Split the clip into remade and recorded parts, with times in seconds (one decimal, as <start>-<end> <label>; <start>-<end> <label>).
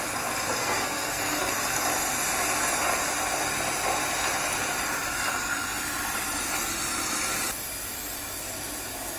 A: 0.0-0.6 recorded; 0.6-1.5 remade; 1.5-9.2 recorded